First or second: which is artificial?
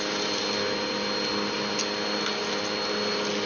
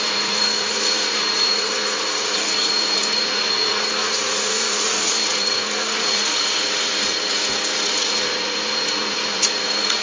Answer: second